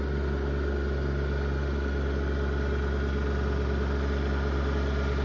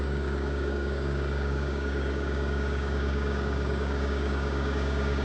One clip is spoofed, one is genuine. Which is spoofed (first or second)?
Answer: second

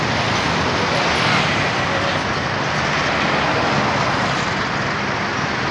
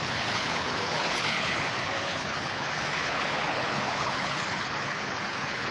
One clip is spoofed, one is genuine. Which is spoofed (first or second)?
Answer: second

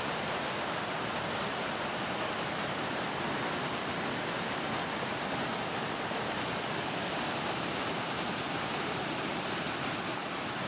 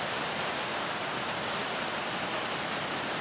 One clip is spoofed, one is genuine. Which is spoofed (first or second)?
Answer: first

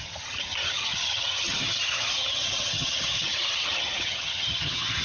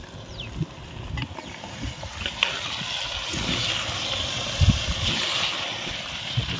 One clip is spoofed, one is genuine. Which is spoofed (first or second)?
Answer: first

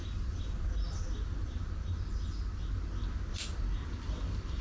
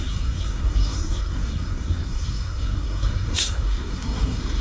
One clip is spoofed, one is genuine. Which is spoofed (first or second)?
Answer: second